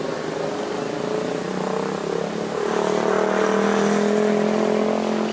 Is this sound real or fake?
real